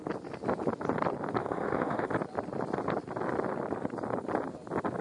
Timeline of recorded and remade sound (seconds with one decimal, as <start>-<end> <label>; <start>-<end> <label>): 0.0-1.4 recorded; 1.4-2.1 remade; 2.1-5.0 recorded